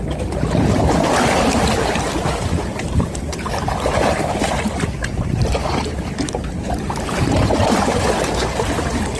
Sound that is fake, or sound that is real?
real